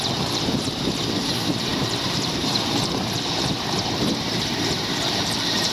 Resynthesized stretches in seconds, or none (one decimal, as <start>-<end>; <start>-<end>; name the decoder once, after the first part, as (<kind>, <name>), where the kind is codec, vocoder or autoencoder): 0.0-5.7 (vocoder, BigVGAN v2)